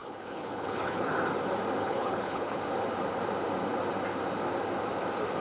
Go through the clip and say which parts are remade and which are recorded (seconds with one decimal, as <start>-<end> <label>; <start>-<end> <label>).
0.0-1.1 remade; 1.1-1.8 recorded; 1.8-2.6 remade; 2.6-5.4 recorded